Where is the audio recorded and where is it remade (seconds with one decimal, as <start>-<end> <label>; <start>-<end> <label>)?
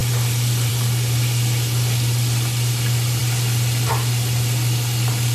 0.0-5.3 recorded